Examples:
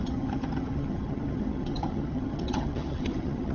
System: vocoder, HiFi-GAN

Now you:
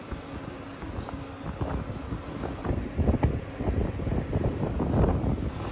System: none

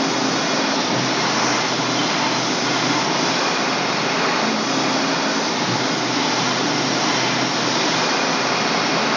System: none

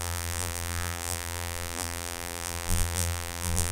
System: vocoder, BigVGAN v2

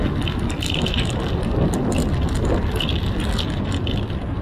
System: none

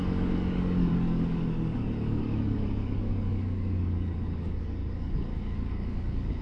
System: codec, DAC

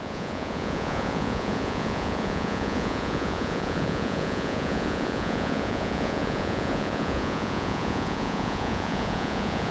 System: vocoder, Vocos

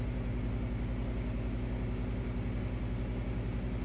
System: none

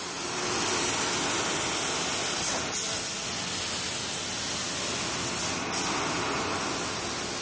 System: none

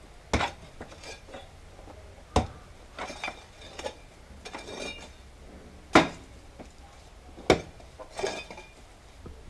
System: none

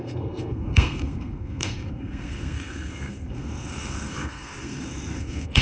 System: codec, SNAC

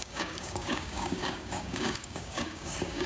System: codec, DAC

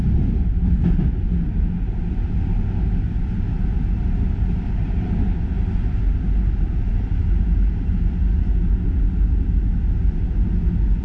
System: none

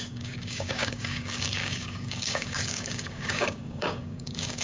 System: codec, DAC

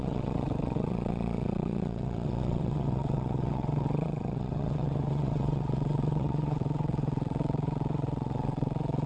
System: vocoder, WaveNeXt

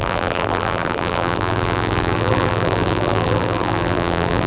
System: vocoder, BigVGAN v2